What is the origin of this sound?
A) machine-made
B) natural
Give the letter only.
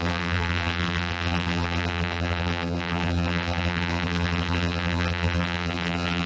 A